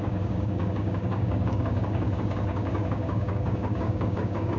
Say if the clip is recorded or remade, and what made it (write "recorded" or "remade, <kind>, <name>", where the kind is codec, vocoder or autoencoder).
remade, codec, DAC